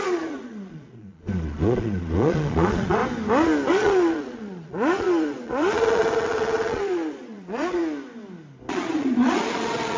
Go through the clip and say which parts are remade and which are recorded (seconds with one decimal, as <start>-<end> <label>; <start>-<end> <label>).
0.0-3.0 remade; 3.0-3.7 recorded; 3.7-7.8 remade; 7.8-8.7 recorded; 8.7-10.0 remade